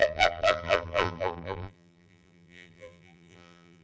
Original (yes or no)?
no